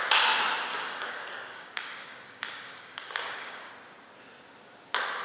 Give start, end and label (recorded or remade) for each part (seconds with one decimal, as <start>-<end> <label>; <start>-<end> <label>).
0.0-0.7 recorded; 0.7-3.7 remade; 3.7-5.2 recorded